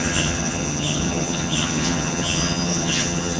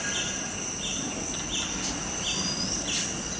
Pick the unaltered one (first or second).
second